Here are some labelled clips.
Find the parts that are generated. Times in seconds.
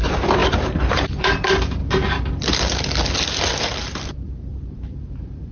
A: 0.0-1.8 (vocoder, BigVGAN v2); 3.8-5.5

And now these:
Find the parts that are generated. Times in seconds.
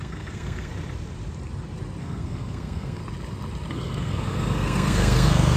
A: 0.0-0.7 (codec, SNAC); 2.0-3.0; 3.7-5.6